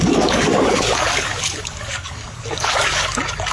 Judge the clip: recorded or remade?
remade